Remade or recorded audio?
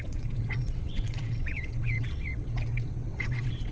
remade